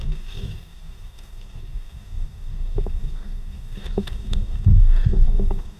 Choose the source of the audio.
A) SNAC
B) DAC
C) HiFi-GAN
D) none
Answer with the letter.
B